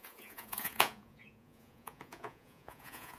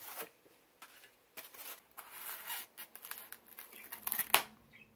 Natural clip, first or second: second